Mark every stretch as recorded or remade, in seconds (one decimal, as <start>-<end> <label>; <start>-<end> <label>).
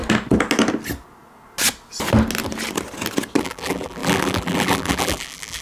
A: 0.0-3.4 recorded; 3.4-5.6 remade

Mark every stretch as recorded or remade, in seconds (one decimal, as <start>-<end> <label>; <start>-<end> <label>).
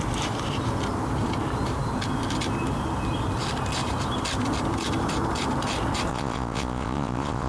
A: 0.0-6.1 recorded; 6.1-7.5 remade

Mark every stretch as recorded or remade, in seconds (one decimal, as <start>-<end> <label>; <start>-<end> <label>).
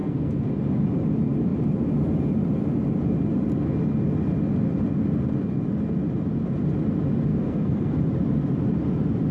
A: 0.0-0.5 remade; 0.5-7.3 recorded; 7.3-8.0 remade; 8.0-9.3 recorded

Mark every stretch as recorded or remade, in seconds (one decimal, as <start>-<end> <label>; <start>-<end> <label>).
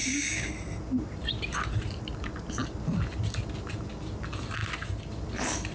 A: 0.0-0.5 remade; 0.5-5.7 recorded